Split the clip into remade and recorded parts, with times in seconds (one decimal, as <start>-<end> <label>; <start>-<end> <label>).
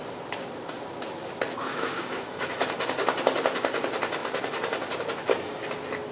0.0-1.7 recorded; 1.7-2.5 remade; 2.5-6.1 recorded